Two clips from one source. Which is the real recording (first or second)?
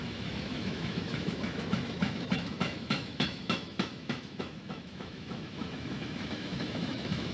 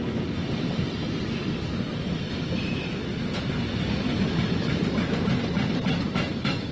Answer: second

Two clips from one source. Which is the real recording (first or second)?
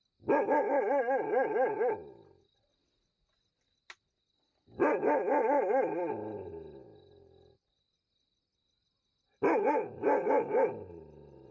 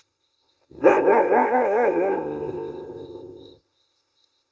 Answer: first